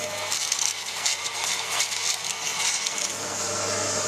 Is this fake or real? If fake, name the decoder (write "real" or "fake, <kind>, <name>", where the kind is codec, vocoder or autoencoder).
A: fake, codec, SNAC